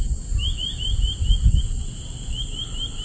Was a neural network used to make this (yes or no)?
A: yes